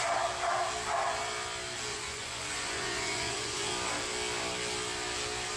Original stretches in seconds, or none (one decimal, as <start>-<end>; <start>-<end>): 0.0-1.9; 3.7-5.6